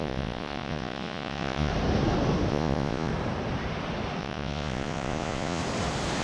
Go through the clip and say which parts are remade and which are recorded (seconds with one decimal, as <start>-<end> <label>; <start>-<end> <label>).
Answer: 0.0-1.7 remade; 1.7-2.5 recorded; 2.5-3.1 remade; 3.1-4.2 recorded; 4.2-5.6 remade; 5.6-6.2 recorded